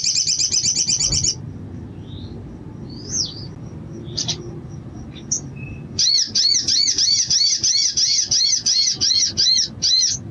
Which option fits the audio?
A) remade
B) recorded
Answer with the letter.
B